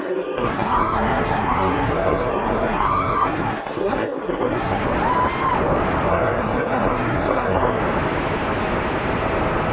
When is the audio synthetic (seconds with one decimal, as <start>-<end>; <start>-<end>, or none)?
0.0-4.8; 6.1-7.8